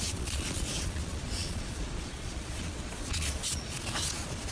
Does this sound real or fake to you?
fake